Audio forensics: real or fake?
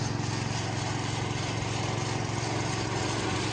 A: real